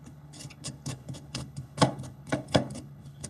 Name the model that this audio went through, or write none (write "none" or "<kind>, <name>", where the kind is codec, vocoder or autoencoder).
codec, HILCodec